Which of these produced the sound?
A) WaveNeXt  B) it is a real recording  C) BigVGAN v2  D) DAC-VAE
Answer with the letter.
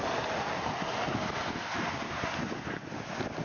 B